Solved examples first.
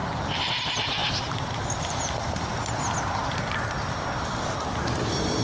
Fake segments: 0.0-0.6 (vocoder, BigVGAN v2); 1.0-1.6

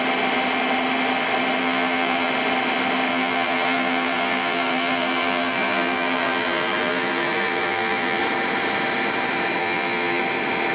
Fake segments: 1.6-2.3 (vocoder, BigVGAN v2); 3.1-8.2; 9.6-10.2